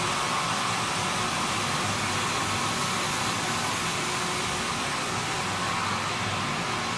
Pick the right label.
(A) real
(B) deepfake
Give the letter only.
A